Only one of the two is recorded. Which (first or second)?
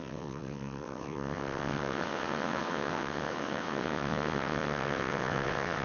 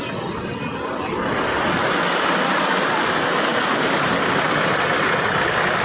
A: second